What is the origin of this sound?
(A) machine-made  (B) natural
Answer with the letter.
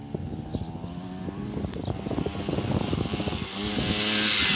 B